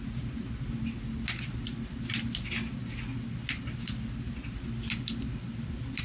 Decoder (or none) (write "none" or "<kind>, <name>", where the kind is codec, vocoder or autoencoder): none